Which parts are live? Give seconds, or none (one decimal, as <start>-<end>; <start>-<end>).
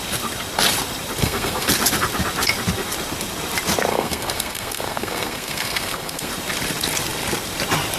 0.0-1.2; 1.7-3.9; 6.3-8.0